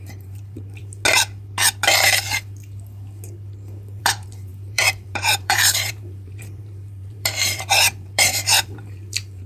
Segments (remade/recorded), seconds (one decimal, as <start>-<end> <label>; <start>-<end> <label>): 0.0-0.8 remade; 0.8-4.0 recorded; 4.0-9.5 remade